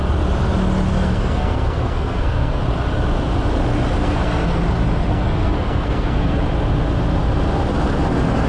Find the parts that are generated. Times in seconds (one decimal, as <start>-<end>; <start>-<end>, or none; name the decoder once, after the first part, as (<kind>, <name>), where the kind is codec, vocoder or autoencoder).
0.9-2.6 (codec, SNAC); 4.0-4.6; 5.1-6.4